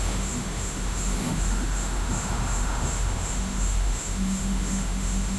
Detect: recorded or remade remade